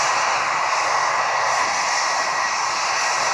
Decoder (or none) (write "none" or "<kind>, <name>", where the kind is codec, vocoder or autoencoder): none